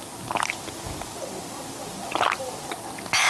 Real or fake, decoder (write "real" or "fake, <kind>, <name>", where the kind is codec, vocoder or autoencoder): real